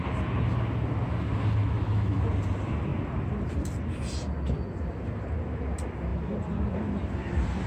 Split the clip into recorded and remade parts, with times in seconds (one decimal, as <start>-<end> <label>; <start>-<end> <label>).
0.0-1.6 recorded; 1.6-2.2 remade; 2.2-7.7 recorded